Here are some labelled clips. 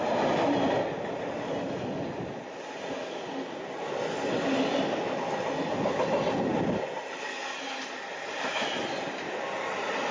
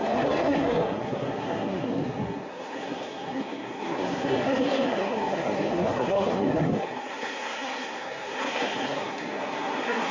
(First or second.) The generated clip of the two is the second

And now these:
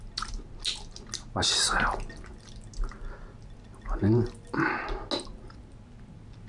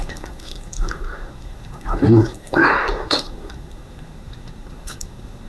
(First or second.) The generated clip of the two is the second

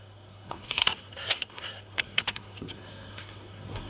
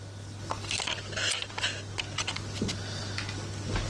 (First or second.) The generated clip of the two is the first